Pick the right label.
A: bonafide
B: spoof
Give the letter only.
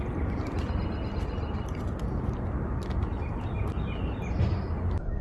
A